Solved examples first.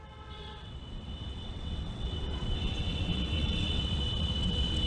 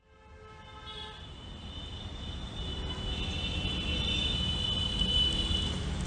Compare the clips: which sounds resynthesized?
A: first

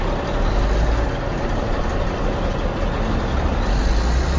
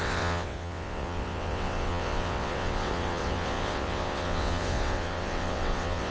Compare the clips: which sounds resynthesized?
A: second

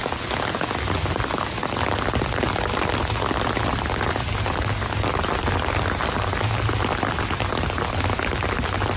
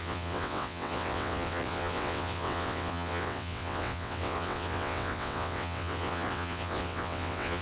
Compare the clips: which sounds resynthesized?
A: second